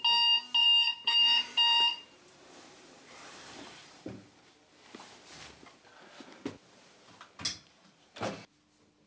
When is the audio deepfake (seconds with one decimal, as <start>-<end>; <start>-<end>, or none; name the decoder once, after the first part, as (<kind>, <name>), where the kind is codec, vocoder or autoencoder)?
0.6-4.4 (vocoder, BigVGAN v2); 7.5-8.3